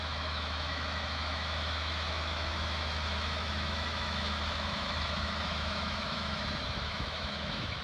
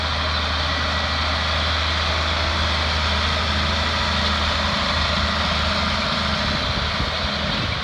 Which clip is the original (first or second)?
second